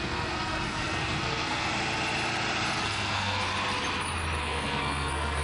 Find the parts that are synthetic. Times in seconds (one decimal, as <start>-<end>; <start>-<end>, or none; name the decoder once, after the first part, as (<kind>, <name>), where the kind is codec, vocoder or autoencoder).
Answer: 0.0-1.7 (codec, SNAC); 2.8-3.5; 4.4-5.4